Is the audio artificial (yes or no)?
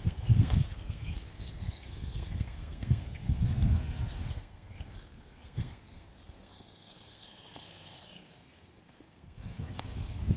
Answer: yes